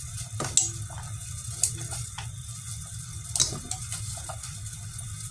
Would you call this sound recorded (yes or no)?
yes